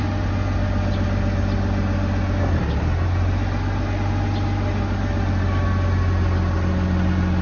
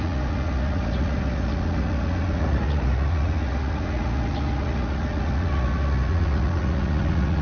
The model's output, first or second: second